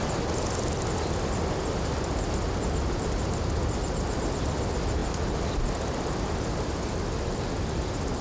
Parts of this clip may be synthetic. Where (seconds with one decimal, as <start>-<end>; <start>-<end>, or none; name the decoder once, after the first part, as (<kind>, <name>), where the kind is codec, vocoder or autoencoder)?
none